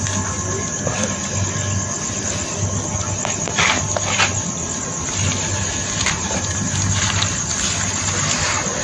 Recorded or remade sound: recorded